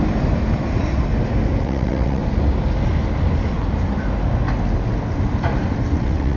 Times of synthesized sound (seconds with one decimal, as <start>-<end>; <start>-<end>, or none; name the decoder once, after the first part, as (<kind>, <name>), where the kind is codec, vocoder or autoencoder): 1.6-2.2 (vocoder, WaveNeXt); 6.0-6.4

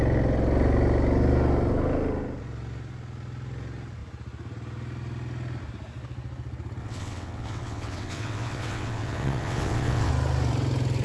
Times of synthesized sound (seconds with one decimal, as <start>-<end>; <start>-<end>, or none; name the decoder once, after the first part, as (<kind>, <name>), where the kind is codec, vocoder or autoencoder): 6.8-10.1 (vocoder, WaveNeXt)

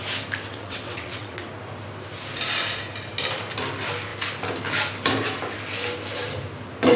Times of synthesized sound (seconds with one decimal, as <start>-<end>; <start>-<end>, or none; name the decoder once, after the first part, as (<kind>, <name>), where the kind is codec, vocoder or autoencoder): 0.5-1.4 (vocoder, WaveNeXt)

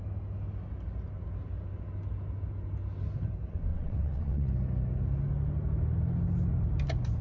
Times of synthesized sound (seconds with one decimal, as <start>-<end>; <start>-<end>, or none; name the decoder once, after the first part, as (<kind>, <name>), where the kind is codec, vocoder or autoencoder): 3.7-4.5 (vocoder, WaveNeXt)